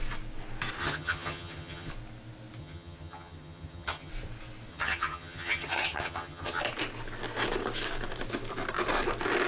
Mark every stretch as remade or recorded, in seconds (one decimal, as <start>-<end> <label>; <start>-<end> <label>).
0.0-0.8 recorded; 0.8-1.9 remade; 1.9-2.6 recorded; 2.6-4.1 remade; 4.1-4.7 recorded; 4.7-6.6 remade; 6.6-9.5 recorded